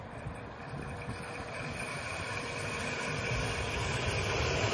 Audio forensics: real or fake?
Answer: fake